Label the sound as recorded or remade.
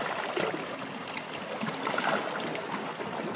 recorded